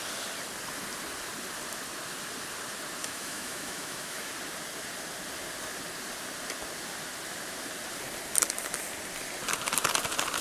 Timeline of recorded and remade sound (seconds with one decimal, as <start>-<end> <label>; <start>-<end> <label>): 0.0-3.0 recorded; 3.0-4.3 remade; 4.3-10.4 recorded